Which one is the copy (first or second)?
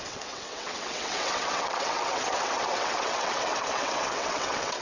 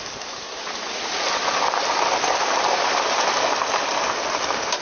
first